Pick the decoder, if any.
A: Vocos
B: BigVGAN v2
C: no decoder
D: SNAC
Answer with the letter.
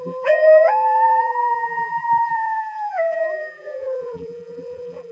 B